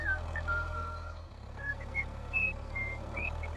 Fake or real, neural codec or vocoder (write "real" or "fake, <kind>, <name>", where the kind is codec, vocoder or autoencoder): fake, codec, SNAC